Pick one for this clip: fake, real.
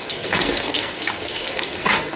fake